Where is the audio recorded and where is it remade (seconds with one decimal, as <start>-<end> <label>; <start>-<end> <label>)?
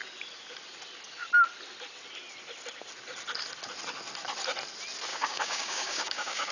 0.0-5.1 recorded; 5.1-6.5 remade